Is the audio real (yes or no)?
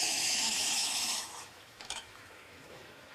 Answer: no